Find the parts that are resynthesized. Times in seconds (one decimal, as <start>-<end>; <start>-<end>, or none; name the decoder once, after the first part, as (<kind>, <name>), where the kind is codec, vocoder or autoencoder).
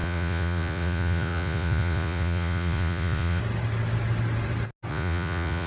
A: 0.0-3.4 (vocoder, Vocos); 4.9-5.7